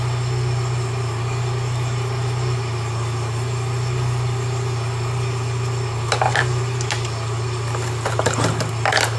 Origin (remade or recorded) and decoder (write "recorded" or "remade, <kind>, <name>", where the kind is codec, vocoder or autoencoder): recorded